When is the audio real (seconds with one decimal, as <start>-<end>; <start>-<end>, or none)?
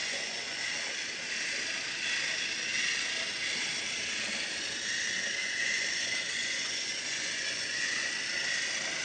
0.6-5.4; 8.1-9.0